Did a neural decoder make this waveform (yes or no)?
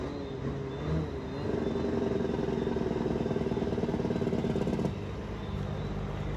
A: no